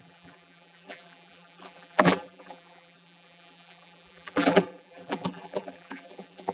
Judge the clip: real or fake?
fake